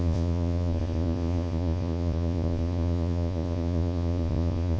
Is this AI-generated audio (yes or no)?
yes